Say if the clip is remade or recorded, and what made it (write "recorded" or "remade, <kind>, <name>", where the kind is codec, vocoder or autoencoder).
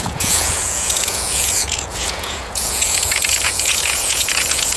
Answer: remade, vocoder, Vocos